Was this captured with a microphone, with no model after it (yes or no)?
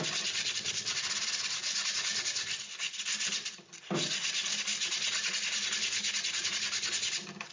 no